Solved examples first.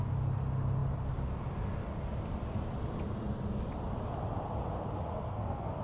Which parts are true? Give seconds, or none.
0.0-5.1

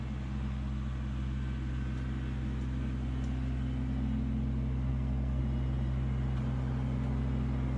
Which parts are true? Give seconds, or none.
0.0-4.9; 5.4-7.8

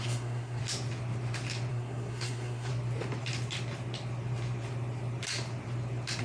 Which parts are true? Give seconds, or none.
0.6-1.7; 2.7-6.2

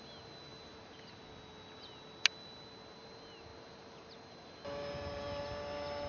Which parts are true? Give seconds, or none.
0.0-6.1

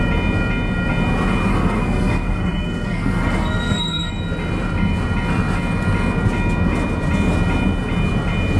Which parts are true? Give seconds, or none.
0.0-1.5; 4.1-8.6

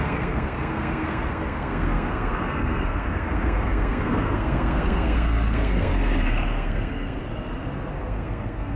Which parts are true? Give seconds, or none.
7.2-7.9

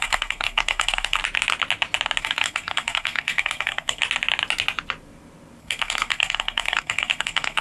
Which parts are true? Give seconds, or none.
1.2-2.2; 4.0-5.6